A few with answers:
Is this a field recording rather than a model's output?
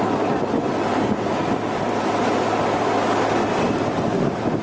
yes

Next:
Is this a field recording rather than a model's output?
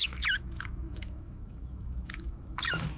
no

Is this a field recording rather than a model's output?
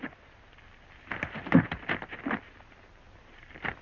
yes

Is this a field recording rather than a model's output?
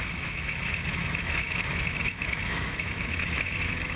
no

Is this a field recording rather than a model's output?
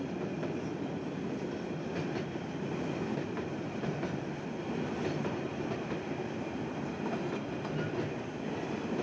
yes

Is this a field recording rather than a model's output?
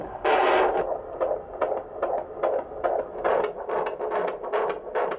yes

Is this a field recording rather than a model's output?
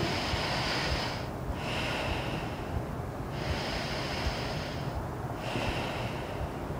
yes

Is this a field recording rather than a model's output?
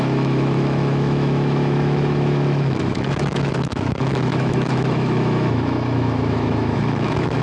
no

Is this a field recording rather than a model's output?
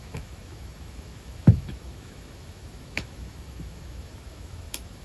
no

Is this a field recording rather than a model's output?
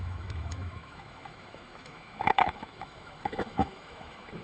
no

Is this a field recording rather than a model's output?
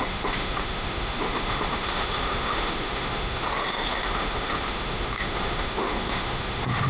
no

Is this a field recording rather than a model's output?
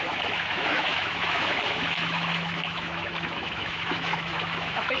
no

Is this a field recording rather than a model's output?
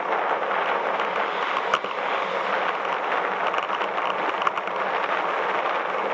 yes